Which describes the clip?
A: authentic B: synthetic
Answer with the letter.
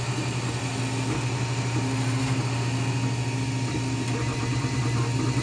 A